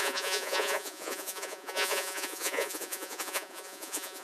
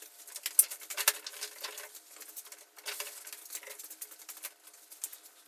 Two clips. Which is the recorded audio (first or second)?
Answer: second